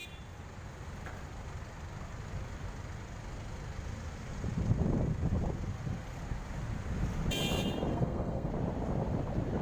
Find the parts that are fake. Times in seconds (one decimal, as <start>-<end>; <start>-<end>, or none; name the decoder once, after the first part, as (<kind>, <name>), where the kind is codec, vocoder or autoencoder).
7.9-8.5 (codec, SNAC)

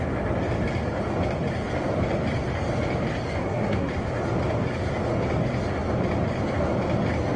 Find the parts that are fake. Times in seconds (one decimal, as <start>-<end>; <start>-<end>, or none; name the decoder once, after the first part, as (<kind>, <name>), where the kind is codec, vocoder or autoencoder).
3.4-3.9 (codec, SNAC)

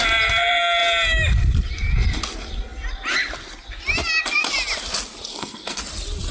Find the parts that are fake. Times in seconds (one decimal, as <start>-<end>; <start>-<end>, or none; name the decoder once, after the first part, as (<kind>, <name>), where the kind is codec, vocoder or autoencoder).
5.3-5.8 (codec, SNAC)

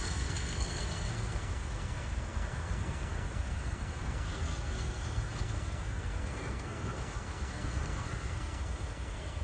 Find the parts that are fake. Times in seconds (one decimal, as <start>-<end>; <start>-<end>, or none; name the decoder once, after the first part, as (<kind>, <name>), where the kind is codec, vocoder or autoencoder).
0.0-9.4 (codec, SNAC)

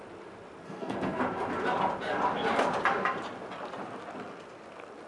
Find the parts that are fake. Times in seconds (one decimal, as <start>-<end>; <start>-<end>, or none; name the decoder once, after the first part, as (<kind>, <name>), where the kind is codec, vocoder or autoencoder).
0.6-1.2 (codec, SNAC)

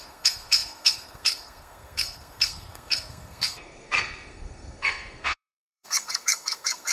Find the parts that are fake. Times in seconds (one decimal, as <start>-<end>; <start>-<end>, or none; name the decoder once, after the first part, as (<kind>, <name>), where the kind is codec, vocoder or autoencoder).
0.0-6.9 (codec, SNAC)